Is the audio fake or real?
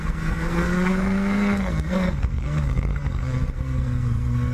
fake